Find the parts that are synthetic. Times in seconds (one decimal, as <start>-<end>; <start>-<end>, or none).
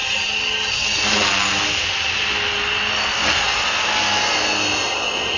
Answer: none